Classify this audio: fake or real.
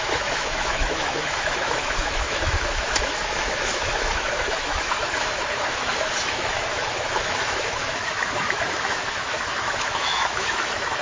fake